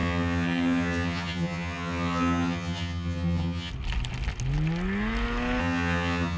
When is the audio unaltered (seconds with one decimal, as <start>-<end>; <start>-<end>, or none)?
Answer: 3.7-5.6